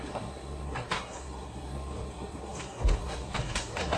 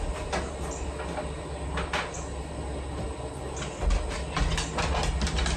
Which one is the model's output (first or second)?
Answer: first